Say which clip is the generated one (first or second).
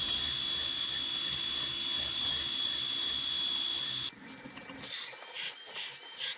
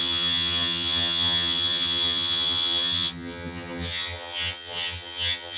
second